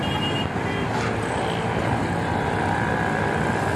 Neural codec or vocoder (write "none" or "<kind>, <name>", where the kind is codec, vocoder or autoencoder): none